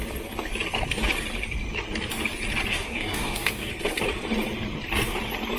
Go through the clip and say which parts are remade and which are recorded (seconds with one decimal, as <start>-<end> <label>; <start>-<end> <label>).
0.0-2.7 recorded; 2.7-3.7 remade; 3.7-5.6 recorded